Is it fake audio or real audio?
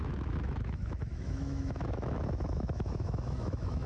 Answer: fake